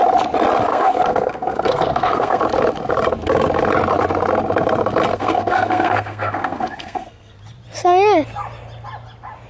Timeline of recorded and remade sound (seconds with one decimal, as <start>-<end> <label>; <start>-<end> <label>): 0.0-0.7 recorded; 0.7-2.4 remade; 2.4-5.1 recorded; 5.1-7.3 remade; 7.3-9.5 recorded

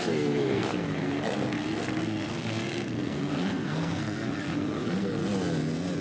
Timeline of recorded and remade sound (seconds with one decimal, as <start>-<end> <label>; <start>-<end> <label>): 0.0-5.2 remade; 5.2-6.0 recorded